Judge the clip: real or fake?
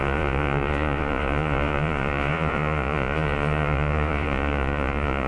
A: fake